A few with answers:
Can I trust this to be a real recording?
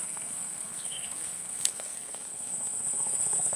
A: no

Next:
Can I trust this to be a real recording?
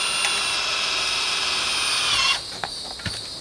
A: yes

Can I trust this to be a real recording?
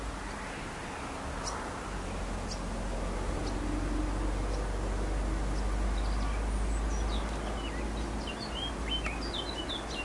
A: yes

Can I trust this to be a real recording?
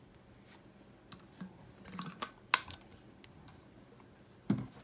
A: yes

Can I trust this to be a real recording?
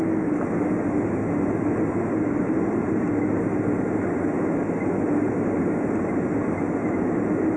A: yes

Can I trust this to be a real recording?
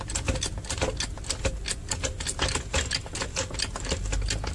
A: yes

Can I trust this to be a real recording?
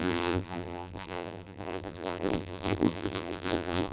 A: no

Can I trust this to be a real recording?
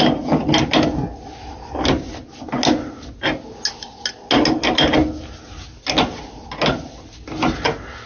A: yes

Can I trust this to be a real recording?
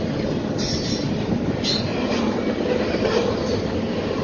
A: yes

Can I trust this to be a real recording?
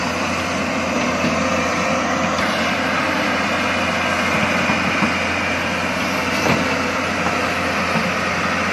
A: yes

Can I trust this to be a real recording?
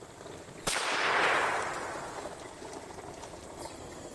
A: no